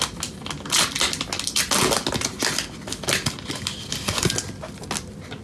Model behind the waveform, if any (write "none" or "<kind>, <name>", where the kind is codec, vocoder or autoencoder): none